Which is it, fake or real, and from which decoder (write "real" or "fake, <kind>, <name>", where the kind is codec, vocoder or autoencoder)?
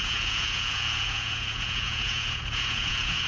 fake, vocoder, Vocos